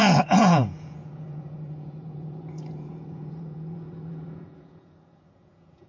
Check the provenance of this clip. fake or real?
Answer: fake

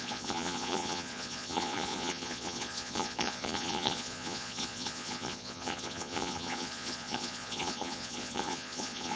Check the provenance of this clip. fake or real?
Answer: fake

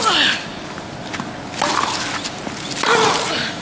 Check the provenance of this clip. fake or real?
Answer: real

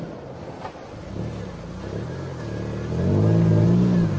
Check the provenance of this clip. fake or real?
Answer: real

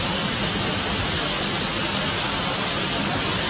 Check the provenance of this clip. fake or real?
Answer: real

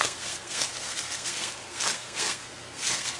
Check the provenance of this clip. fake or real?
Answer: fake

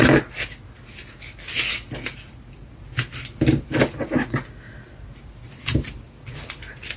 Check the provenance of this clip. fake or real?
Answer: real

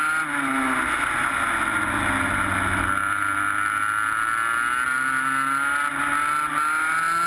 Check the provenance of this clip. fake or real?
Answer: real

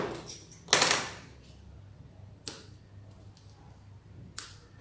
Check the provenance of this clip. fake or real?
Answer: real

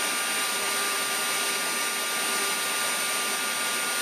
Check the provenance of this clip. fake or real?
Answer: real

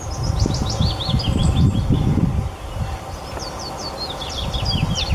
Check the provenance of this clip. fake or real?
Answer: real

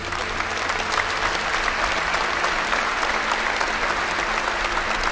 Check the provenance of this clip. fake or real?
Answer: real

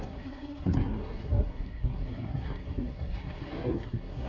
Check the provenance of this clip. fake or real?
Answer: fake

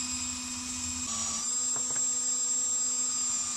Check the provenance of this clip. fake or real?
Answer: real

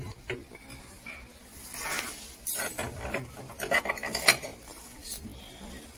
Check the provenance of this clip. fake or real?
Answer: real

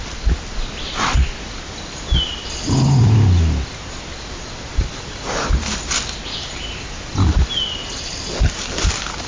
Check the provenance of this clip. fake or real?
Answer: real